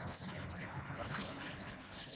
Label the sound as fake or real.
fake